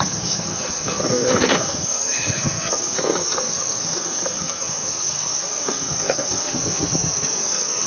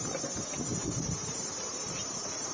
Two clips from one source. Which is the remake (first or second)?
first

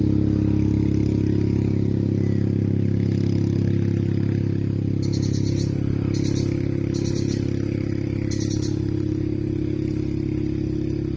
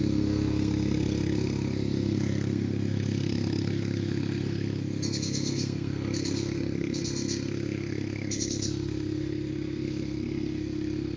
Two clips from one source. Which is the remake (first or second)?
second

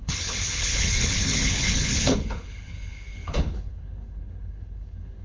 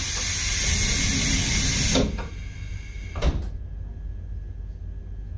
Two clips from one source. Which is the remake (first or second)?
first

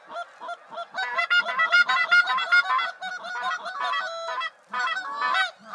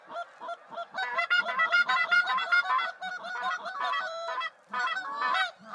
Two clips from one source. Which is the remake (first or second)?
second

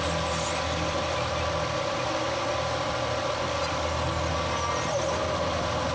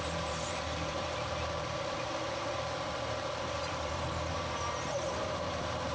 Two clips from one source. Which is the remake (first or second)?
second